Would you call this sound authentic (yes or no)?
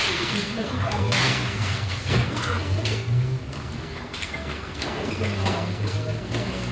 no